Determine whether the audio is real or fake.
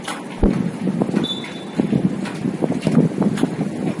real